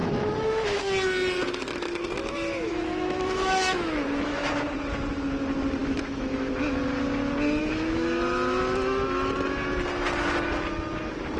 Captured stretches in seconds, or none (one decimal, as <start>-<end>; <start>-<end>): 0.8-2.2; 4.5-5.8; 6.5-7.6; 8.6-11.4